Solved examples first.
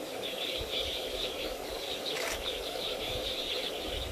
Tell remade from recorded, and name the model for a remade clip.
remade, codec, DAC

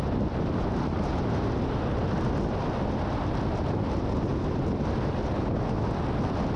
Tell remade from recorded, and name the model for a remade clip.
recorded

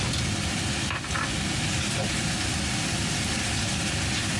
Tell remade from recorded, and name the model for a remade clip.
recorded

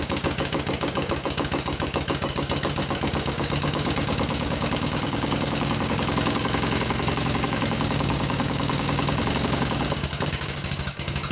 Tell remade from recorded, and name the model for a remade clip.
remade, codec, DAC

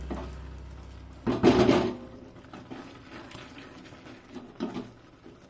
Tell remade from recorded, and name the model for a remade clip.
recorded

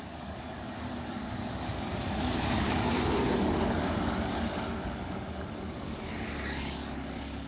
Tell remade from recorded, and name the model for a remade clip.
remade, codec, DAC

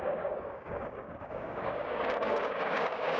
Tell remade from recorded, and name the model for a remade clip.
remade, codec, DAC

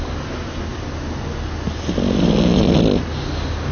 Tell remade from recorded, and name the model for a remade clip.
recorded